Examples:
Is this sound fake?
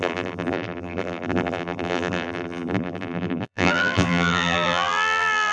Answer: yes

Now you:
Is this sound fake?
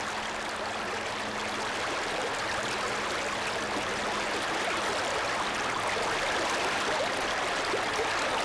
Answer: no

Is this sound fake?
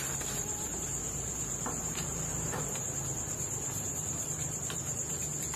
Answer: yes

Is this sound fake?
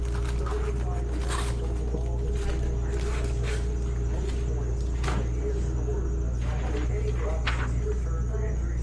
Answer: no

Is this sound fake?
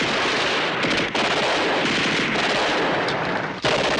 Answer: no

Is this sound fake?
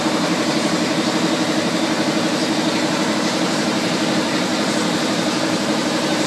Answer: yes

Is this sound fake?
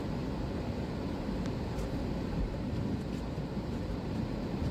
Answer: yes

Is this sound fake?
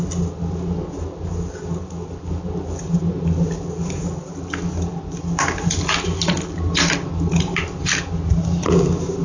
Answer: no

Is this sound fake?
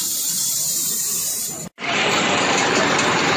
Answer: yes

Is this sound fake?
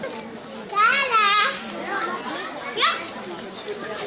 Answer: no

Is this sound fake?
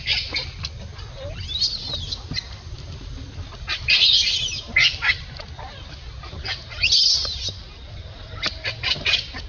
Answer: no